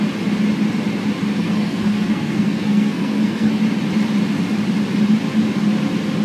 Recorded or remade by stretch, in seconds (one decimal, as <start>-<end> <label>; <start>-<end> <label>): 0.0-1.3 recorded; 1.3-3.6 remade; 3.6-6.2 recorded

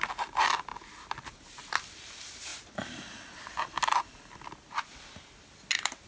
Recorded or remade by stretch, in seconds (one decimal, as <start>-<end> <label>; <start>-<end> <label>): 0.0-6.1 recorded

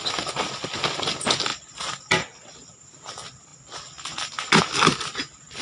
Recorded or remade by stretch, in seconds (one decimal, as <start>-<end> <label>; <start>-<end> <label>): 0.0-5.6 recorded

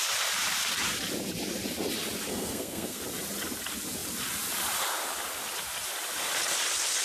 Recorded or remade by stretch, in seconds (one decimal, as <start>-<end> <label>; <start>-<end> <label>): 0.0-2.3 recorded; 2.3-3.0 remade; 3.0-7.0 recorded